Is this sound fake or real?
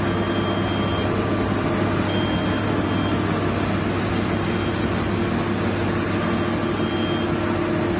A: real